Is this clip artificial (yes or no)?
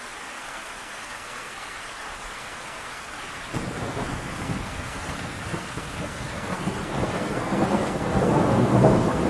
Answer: yes